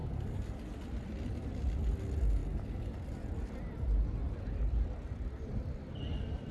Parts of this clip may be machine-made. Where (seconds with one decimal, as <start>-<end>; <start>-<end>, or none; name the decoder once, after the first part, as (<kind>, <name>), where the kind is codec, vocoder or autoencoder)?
0.0-1.5 (vocoder, BigVGAN v2)